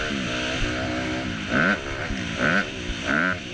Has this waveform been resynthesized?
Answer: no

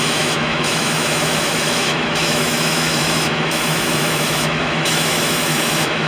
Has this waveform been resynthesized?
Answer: yes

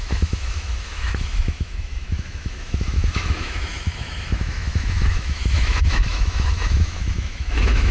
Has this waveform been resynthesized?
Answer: yes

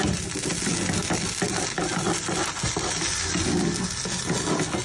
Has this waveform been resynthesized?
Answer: no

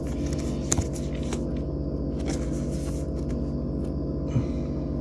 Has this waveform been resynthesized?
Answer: no